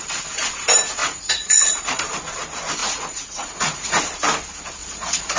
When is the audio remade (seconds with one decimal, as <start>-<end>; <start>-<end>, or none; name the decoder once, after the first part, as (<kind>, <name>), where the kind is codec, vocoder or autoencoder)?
1.0-2.0 (vocoder, Vocos); 2.8-4.0; 4.8-5.4